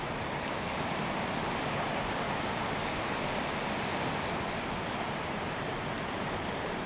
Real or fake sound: real